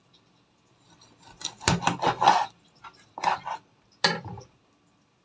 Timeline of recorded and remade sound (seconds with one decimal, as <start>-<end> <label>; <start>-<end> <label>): 0.0-3.1 remade; 3.1-5.2 recorded